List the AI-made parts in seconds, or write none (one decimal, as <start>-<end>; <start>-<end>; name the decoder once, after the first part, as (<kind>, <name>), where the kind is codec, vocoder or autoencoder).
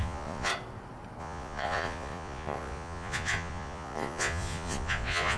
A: 0.0-0.5 (vocoder, Vocos); 1.2-5.4